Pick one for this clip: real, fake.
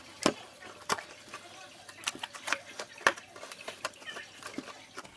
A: real